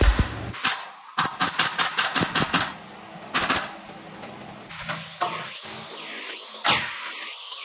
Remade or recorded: recorded